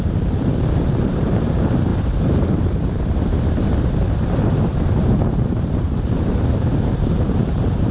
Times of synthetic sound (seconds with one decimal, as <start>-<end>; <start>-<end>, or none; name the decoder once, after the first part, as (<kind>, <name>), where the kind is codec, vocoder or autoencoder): 0.0-7.9 (vocoder, BigVGAN v2)